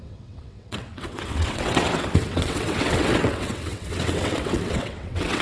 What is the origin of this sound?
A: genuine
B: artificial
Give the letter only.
B